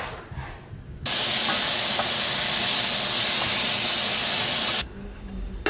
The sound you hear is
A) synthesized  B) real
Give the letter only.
B